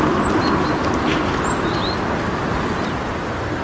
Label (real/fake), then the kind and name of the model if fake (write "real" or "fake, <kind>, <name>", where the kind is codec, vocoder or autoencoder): real